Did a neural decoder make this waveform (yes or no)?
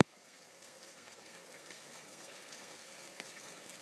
yes